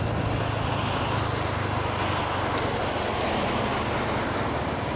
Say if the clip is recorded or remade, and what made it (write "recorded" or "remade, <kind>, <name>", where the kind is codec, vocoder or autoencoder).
recorded